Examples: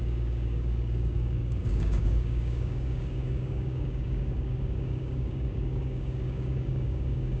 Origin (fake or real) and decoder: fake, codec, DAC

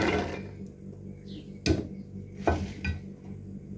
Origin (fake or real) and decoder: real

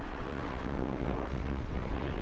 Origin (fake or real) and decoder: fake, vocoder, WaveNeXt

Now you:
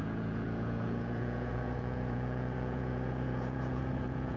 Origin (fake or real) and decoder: fake, vocoder, Vocos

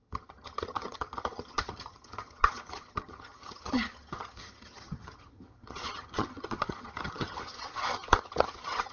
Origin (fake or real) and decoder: fake, vocoder, HiFi-GAN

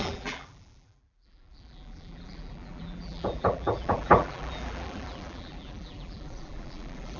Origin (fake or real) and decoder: fake, vocoder, BigVGAN v2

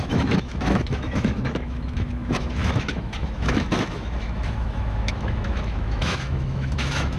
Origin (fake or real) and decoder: fake, autoencoder, DAC-VAE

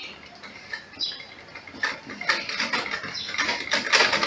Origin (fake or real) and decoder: real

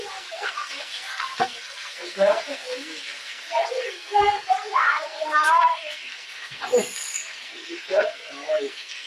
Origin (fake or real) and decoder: fake, codec, SNAC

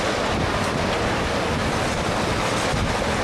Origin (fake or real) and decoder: real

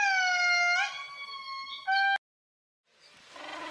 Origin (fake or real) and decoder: real